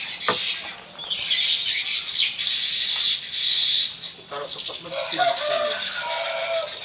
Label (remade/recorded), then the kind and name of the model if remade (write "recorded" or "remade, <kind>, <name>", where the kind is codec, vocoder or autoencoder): recorded